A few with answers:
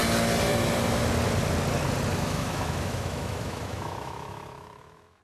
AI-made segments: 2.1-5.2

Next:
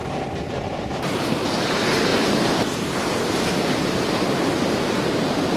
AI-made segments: 0.0-1.5; 2.1-4.5